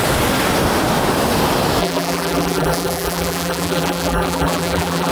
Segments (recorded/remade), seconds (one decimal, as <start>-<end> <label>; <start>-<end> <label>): 0.0-1.8 recorded; 1.8-5.1 remade